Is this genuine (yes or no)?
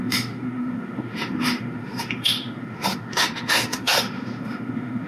no